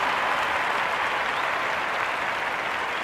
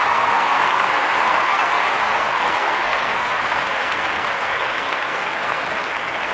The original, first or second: first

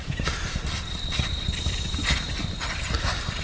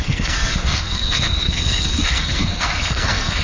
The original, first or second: first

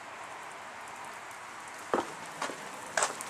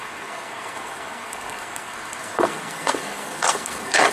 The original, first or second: first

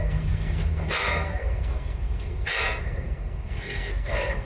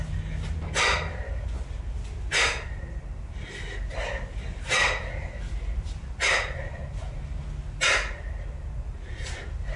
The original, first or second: second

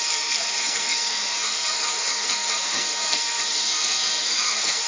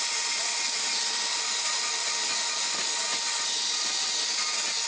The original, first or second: second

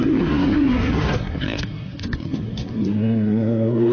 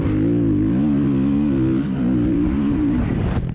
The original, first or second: second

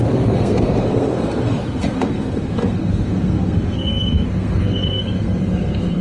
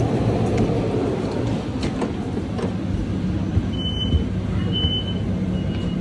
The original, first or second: second